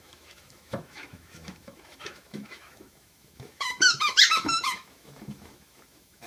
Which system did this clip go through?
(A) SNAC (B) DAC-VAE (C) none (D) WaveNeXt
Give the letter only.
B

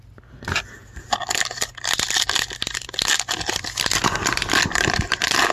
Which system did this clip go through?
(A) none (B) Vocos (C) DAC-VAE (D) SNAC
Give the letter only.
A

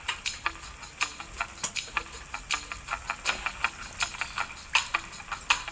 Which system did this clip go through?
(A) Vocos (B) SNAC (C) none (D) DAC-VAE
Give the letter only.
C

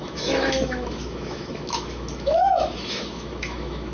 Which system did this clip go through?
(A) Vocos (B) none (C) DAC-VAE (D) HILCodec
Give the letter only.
C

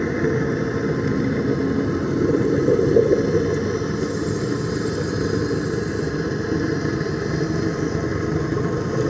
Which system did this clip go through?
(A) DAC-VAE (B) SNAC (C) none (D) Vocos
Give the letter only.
C